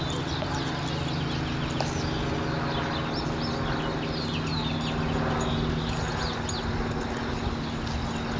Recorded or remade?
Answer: recorded